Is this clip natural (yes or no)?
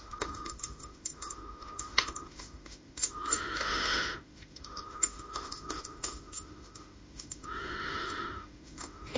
no